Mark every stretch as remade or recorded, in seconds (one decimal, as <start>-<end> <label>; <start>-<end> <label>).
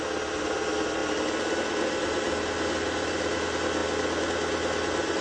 0.0-5.2 recorded